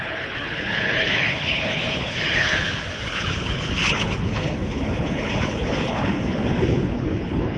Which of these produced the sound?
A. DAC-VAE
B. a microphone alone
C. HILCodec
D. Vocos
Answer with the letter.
C